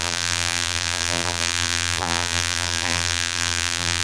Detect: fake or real fake